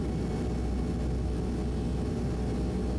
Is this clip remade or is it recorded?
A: recorded